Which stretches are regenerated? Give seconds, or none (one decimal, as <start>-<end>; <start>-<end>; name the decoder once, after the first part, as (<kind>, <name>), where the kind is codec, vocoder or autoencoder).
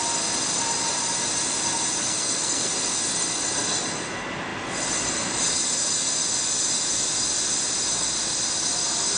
2.0-2.7 (codec, SNAC)